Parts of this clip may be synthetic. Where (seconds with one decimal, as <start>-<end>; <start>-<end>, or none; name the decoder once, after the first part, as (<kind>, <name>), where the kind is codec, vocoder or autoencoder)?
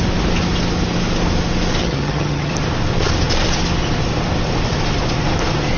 1.8-2.5 (vocoder, HiFi-GAN)